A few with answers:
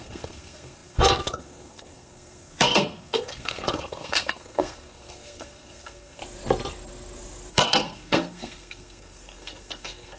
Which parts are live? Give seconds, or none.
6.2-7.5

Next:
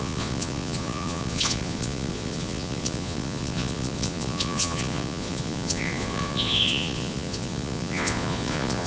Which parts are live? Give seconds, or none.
none

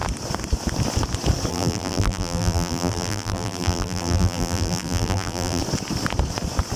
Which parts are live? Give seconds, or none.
0.0-1.5; 5.6-6.8

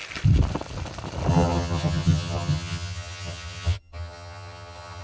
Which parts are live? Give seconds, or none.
0.0-1.3